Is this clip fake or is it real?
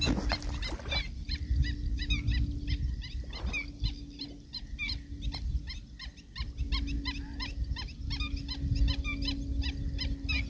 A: real